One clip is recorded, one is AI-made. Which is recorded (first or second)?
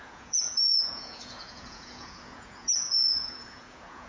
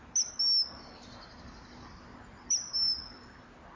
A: second